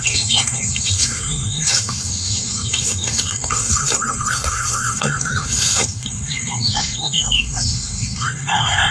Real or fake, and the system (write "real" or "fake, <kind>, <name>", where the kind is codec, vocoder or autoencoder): fake, codec, SNAC